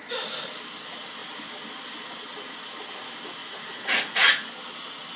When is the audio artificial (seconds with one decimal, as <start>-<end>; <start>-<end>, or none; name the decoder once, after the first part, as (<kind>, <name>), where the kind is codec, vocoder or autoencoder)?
3.4-4.5 (vocoder, Vocos)